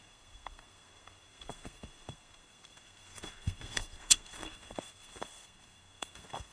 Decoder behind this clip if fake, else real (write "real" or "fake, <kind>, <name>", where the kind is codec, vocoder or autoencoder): fake, codec, SNAC